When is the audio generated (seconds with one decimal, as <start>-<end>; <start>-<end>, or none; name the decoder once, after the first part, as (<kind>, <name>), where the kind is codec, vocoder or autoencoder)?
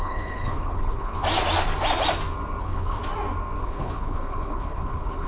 0.0-1.2 (codec, HILCodec); 2.6-3.0; 3.6-5.3